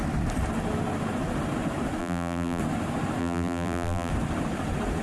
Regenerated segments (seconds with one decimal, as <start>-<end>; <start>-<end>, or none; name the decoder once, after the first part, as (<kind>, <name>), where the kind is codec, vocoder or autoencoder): 2.0-2.6 (vocoder, BigVGAN v2); 3.2-4.1